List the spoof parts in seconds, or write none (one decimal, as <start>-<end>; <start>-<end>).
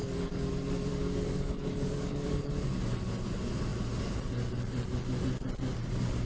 0.0-0.5; 0.9-2.5